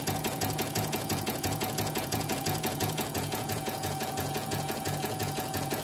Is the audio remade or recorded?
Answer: remade